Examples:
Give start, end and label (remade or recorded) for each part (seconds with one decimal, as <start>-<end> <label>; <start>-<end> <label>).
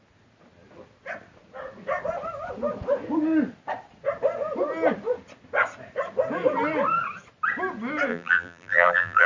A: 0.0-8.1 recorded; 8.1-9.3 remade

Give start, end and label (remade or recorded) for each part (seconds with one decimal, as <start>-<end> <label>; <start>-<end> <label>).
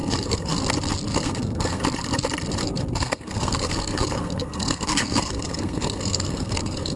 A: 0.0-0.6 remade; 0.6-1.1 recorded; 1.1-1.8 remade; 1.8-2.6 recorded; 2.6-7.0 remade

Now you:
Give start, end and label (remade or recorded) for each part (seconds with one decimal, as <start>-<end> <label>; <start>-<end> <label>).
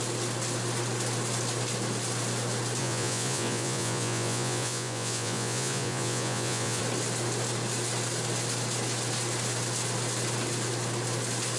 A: 0.0-2.8 recorded; 2.8-6.8 remade; 6.8-11.6 recorded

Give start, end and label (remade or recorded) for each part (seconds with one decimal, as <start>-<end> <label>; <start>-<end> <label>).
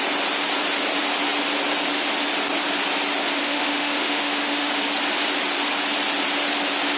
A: 0.0-3.4 recorded; 3.4-4.7 remade; 4.7-7.0 recorded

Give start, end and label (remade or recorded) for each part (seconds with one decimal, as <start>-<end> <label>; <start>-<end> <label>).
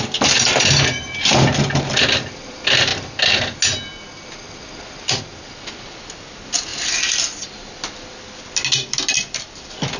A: 0.0-2.9 remade; 2.9-6.2 recorded; 6.2-6.7 remade; 6.7-8.9 recorded; 8.9-10.0 remade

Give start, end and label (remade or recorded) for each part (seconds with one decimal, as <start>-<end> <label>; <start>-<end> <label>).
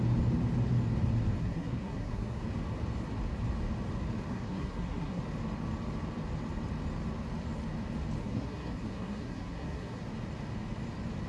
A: 0.0-1.4 recorded; 1.4-2.4 remade; 2.4-4.3 recorded; 4.3-5.2 remade; 5.2-8.2 recorded; 8.2-10.0 remade; 10.0-11.3 recorded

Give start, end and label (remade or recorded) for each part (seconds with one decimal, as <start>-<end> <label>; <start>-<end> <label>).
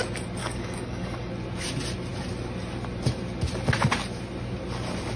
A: 0.0-0.4 recorded; 0.4-1.3 remade; 1.3-5.2 recorded